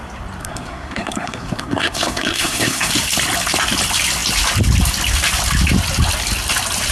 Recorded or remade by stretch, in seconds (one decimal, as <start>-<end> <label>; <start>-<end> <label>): 0.0-0.4 recorded; 0.4-2.9 remade; 2.9-6.9 recorded